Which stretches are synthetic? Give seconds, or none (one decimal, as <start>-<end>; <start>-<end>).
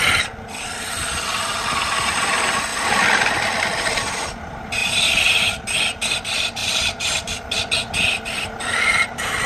2.7-3.8; 6.6-7.6